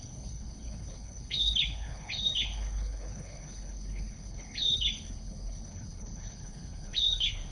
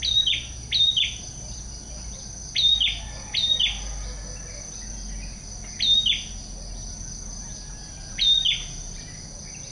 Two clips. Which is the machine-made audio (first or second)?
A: first